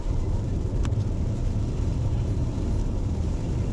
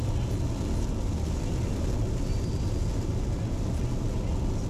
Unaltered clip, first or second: second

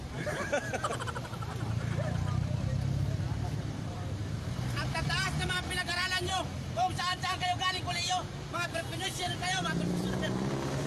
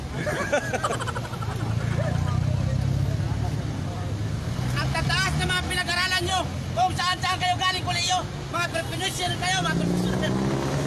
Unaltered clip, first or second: second